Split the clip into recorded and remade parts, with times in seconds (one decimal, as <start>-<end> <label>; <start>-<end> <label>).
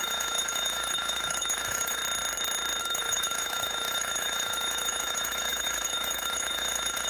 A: 0.0-2.0 remade; 2.0-2.8 recorded; 2.8-7.1 remade